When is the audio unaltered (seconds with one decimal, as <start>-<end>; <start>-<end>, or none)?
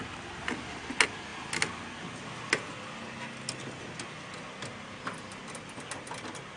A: 0.0-6.6